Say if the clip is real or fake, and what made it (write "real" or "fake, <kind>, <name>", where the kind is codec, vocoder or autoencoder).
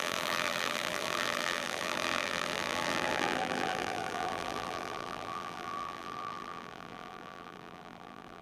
fake, vocoder, BigVGAN v2